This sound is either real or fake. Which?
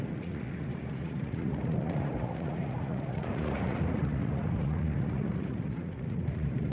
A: fake